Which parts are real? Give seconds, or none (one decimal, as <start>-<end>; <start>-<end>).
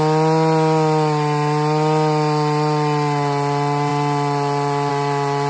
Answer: 0.0-5.5